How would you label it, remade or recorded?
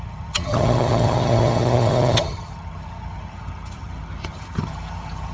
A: remade